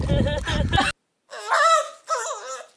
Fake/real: real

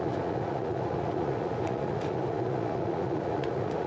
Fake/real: fake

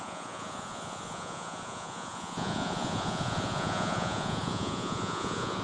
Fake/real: fake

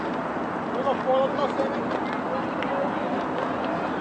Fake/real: real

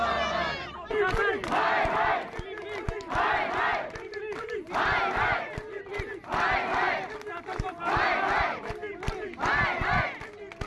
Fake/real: real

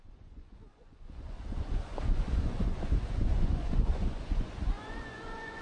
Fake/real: fake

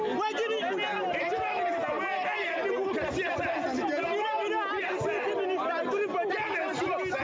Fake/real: real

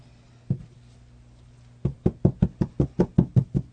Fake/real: real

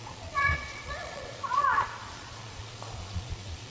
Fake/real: fake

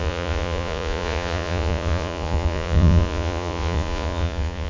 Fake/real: fake